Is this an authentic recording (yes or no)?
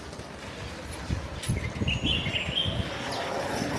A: yes